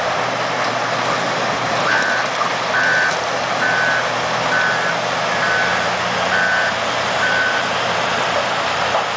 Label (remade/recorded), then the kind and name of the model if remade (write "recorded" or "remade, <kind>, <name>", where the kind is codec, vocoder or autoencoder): recorded